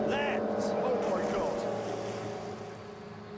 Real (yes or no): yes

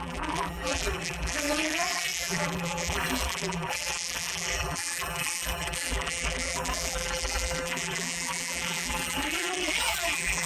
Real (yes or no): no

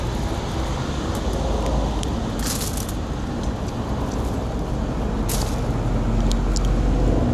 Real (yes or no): yes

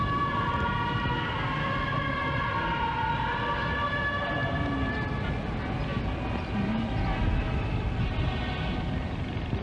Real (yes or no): yes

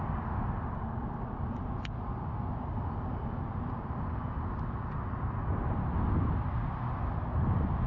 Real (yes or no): yes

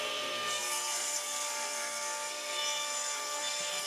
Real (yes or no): no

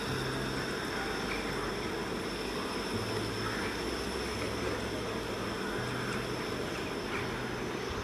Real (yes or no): yes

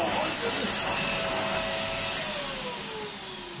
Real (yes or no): yes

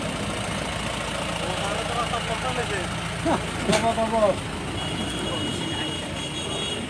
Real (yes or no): yes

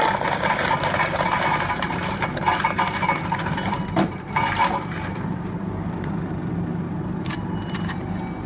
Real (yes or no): no